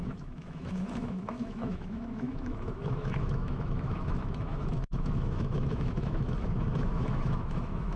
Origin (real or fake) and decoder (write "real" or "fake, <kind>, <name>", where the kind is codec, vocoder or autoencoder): fake, autoencoder, DAC-VAE